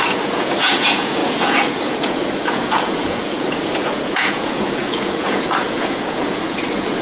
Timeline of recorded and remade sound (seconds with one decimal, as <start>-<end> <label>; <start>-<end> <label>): 0.0-7.0 remade